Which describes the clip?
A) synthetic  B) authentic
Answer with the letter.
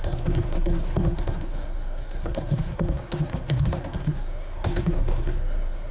A